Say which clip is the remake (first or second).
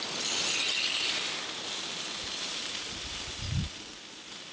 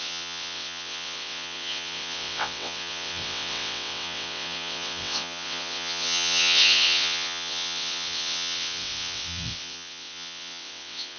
second